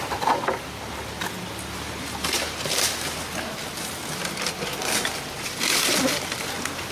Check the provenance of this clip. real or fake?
real